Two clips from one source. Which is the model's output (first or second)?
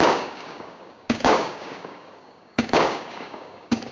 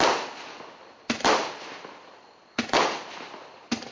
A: first